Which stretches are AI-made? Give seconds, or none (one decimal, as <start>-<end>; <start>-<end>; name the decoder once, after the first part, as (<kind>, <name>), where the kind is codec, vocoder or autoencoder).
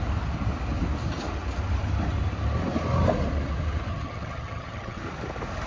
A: 3.9-5.0 (vocoder, HiFi-GAN)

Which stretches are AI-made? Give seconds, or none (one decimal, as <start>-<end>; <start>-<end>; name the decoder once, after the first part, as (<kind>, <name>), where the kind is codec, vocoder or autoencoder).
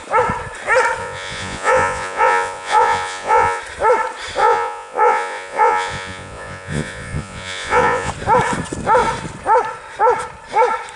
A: 1.0-3.6 (vocoder, Vocos); 4.4-8.1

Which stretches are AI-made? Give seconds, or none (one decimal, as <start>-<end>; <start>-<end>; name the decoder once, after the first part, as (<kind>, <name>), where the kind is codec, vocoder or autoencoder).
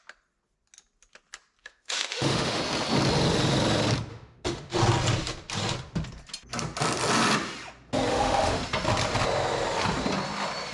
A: 1.6-2.6 (autoencoder, DAC-VAE); 4.1-4.7; 8.1-8.6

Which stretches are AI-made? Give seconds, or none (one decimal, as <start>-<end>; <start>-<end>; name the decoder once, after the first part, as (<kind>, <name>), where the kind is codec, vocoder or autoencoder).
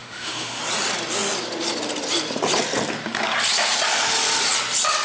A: 0.0-0.6 (autoencoder, DAC-VAE)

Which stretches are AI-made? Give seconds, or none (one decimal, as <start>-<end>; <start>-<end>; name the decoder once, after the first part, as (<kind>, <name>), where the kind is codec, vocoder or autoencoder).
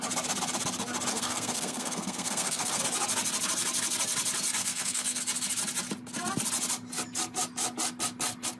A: 1.1-2.8 (codec, SNAC); 4.6-5.2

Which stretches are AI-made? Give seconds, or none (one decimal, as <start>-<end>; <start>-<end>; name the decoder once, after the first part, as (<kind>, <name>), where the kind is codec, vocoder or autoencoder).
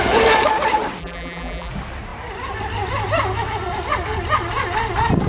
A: 1.0-1.7 (vocoder, BigVGAN v2)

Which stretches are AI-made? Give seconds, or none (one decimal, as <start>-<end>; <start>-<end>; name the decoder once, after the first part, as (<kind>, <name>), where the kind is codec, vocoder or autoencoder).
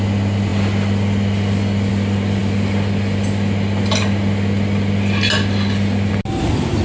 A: none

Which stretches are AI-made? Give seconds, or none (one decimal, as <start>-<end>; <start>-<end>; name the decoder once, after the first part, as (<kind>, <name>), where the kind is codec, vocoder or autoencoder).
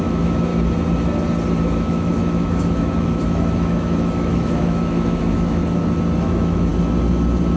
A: 0.0-0.5 (autoencoder, DAC-VAE); 1.6-5.6; 6.2-6.7